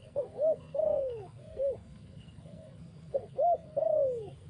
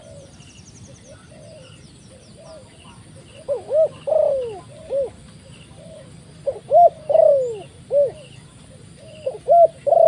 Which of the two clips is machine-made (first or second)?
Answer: first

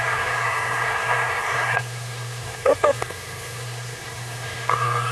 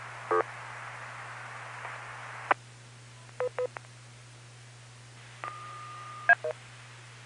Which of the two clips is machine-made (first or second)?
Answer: first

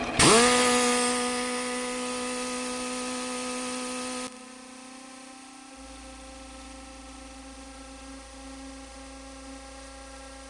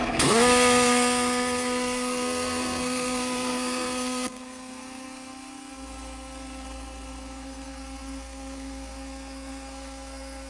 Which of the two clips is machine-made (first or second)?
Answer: second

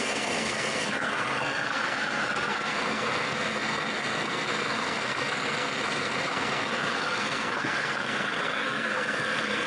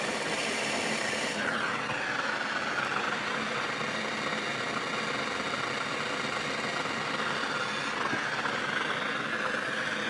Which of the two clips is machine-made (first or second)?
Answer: first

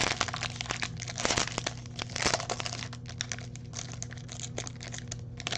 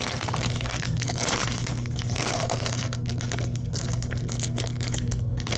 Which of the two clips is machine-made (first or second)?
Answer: second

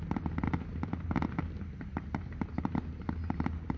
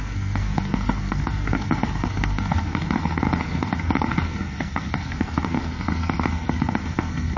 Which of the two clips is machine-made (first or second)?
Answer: second